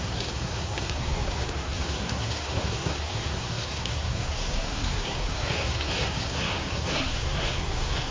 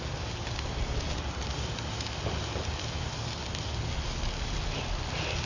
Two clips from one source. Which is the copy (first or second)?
first